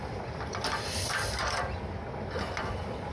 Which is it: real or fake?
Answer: real